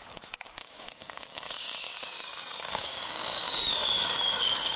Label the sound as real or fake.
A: fake